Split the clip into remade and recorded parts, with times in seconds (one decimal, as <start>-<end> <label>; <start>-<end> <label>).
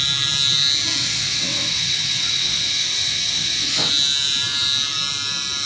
0.0-1.0 recorded; 1.0-3.9 remade; 3.9-5.7 recorded